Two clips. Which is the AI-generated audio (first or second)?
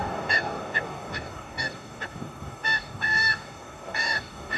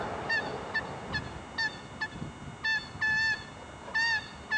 first